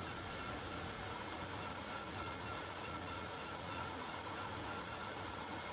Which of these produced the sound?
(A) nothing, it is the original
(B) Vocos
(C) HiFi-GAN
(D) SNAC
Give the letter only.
B